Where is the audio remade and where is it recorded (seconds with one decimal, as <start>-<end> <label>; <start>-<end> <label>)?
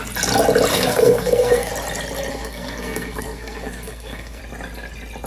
0.0-0.7 recorded; 0.7-1.7 remade; 1.7-2.3 recorded; 2.3-4.4 remade; 4.4-5.3 recorded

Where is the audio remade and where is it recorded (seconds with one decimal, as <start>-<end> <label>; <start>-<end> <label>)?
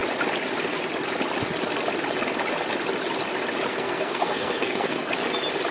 0.0-3.7 recorded; 3.7-5.1 remade; 5.1-5.7 recorded